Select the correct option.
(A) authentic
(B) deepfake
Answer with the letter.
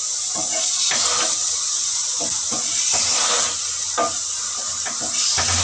A